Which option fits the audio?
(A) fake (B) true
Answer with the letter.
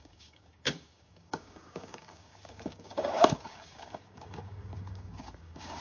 A